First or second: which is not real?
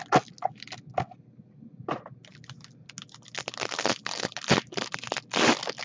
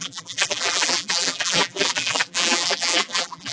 second